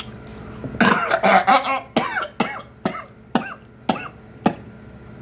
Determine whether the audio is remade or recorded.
recorded